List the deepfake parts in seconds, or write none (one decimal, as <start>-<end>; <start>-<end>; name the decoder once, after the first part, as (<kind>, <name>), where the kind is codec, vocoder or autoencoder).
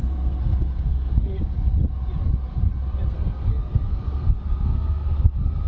0.0-1.3 (codec, SNAC); 3.1-5.7